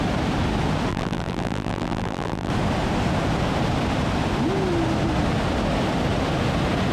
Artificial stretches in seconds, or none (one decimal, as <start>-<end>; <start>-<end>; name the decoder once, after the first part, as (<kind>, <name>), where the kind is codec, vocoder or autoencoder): 0.9-2.5 (vocoder, BigVGAN v2)